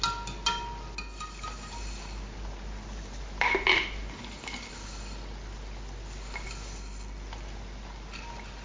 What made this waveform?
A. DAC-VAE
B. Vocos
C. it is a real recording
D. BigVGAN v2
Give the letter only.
C